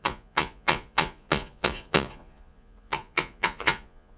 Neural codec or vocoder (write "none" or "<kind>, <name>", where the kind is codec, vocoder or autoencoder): vocoder, Vocos